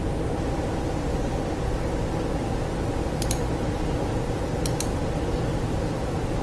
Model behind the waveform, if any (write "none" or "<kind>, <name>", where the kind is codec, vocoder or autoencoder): none